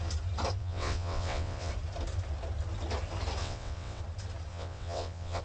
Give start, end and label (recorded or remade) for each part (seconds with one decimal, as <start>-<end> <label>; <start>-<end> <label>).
0.0-0.6 recorded; 0.6-1.7 remade; 1.7-3.4 recorded; 3.4-4.0 remade; 4.0-4.5 recorded; 4.5-5.4 remade